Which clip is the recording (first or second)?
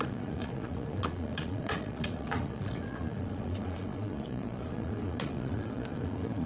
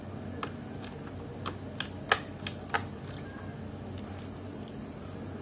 second